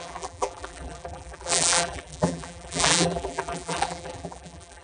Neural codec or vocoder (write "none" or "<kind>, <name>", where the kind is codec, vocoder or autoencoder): vocoder, BigVGAN v2